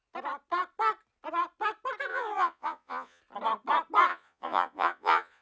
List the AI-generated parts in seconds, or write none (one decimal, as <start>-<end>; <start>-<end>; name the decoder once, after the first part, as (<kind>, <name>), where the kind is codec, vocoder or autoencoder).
2.1-3.2 (vocoder, Vocos); 4.1-5.4